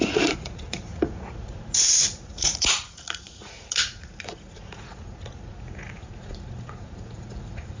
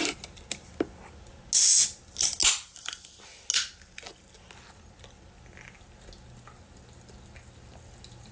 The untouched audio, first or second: second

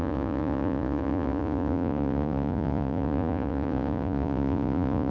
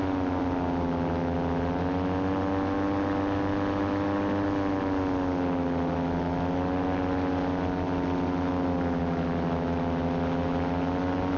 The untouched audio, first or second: second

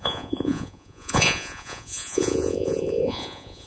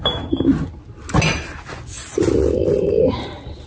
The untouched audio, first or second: second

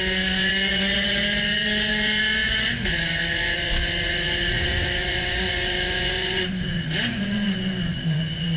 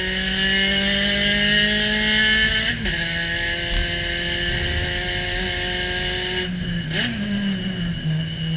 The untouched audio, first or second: second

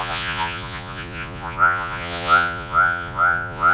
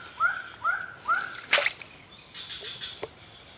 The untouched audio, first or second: second